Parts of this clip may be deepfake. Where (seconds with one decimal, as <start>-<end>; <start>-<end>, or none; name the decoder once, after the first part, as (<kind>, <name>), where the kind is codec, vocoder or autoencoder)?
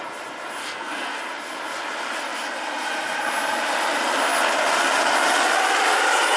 0.6-1.2 (codec, SNAC)